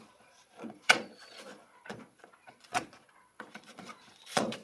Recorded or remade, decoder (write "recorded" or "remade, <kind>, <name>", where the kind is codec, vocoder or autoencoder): remade, vocoder, Vocos